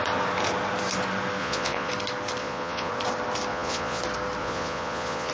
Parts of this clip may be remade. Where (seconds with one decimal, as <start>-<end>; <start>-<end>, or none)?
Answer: 1.4-1.9; 2.4-2.9; 3.5-4.0; 4.4-5.3